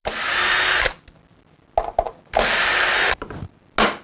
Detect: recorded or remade recorded